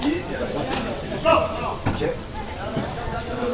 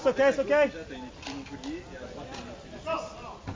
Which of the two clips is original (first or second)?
second